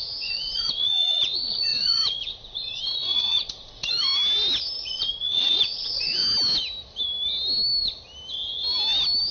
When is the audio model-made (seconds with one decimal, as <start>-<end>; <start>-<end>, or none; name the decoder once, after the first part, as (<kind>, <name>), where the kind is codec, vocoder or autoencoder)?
0.0-4.1 (vocoder, Vocos); 4.9-6.2